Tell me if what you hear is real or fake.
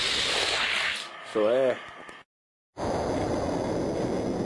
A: real